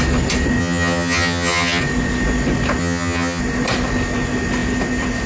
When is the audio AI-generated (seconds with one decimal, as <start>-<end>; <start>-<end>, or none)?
0.6-1.8; 2.8-3.4